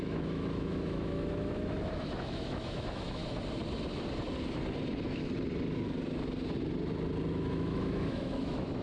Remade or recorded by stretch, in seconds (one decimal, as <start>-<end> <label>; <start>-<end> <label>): 0.0-3.2 remade; 3.2-7.3 recorded; 7.3-8.8 remade